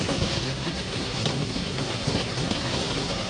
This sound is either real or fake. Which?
fake